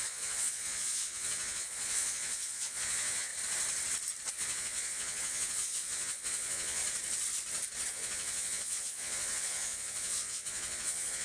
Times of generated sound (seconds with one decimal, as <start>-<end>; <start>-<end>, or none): 0.0-3.3; 4.3-6.8; 7.9-11.2

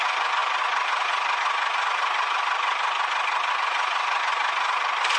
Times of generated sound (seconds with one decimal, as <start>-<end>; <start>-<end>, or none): none

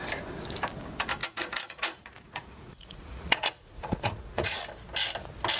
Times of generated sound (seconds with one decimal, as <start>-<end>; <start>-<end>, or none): 1.2-4.6

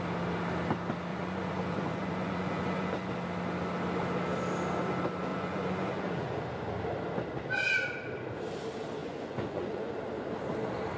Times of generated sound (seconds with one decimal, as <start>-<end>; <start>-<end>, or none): 1.1-3.1; 5.3-6.4; 9.0-9.9

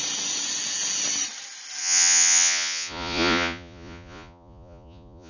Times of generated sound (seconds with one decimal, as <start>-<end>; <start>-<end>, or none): 1.8-5.3